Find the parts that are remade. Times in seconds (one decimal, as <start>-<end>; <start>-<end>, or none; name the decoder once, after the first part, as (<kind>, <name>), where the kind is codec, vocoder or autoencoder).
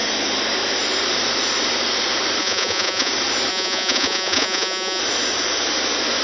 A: 2.4-3.1 (vocoder, Vocos); 3.5-5.0